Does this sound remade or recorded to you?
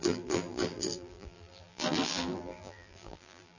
remade